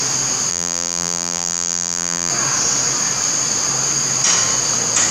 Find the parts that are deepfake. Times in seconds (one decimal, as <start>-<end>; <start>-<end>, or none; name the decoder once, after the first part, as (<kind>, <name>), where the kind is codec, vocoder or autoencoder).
0.5-2.3 (vocoder, BigVGAN v2)